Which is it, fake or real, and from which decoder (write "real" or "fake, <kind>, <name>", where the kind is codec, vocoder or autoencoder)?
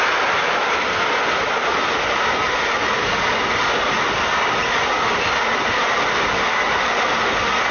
real